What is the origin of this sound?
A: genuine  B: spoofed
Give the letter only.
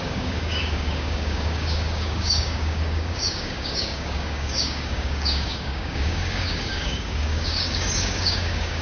B